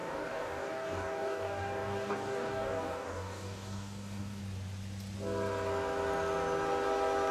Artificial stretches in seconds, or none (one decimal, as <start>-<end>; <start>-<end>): 0.0-4.4